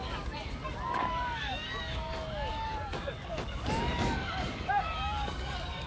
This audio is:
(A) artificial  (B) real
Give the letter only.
A